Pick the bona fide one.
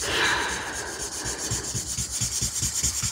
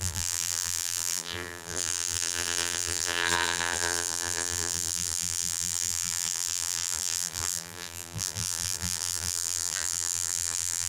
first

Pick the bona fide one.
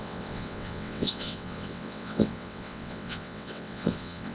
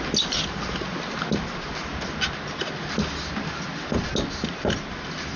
second